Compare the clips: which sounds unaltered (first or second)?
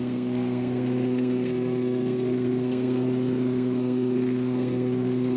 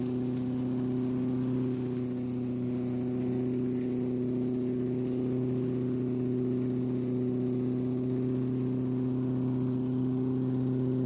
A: second